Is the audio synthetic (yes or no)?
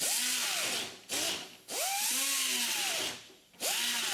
no